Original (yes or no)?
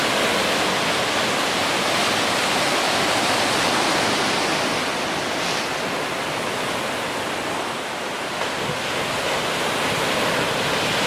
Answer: yes